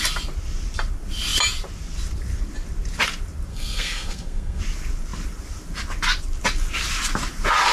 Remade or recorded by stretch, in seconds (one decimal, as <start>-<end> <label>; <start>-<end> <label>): 0.0-3.5 recorded; 3.5-4.6 remade; 4.6-7.7 recorded